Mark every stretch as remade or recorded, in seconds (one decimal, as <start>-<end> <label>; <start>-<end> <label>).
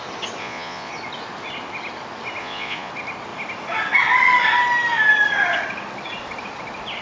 0.0-0.4 recorded; 0.4-0.9 remade; 0.9-2.4 recorded; 2.4-2.9 remade; 2.9-7.0 recorded